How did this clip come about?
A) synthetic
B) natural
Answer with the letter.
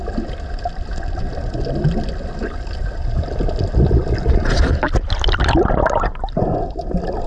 B